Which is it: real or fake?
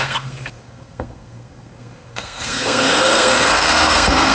fake